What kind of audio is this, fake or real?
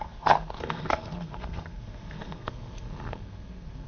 fake